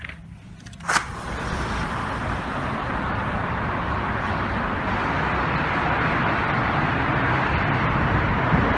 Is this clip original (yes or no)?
yes